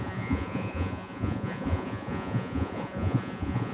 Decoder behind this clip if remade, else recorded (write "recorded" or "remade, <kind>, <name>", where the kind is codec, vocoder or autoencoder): remade, vocoder, Vocos